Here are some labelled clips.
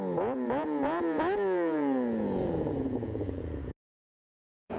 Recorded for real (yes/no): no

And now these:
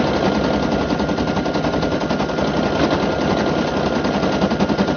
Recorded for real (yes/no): yes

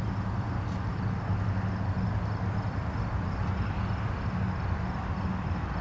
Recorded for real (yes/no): yes